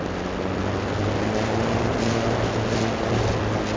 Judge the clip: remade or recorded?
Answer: recorded